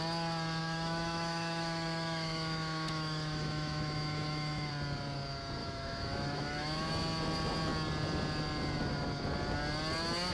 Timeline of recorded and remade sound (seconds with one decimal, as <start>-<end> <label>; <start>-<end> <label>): 0.0-0.6 recorded; 0.6-4.7 remade; 4.7-5.6 recorded; 5.6-6.9 remade; 6.9-10.3 recorded